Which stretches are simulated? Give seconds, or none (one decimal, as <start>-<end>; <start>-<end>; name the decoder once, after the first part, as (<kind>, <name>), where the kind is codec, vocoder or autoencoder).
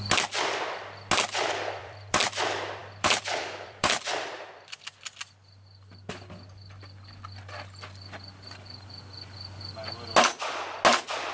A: 1.8-2.4 (vocoder, BigVGAN v2); 2.8-4.8